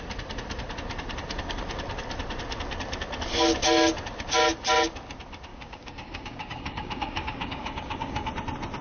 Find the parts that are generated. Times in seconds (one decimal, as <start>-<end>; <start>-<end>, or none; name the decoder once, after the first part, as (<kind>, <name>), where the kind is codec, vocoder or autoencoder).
5.5-8.3 (codec, DAC)